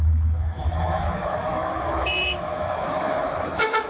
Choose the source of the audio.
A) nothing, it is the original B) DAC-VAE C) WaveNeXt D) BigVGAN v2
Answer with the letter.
B